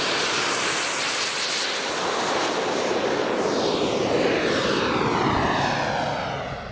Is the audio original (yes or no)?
yes